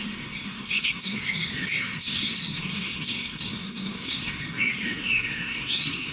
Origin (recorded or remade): remade